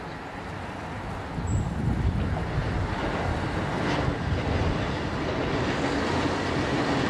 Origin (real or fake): real